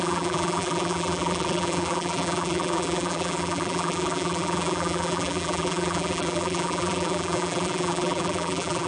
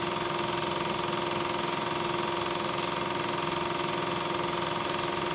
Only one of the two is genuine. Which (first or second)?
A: second